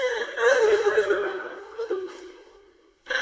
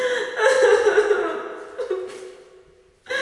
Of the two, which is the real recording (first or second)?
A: second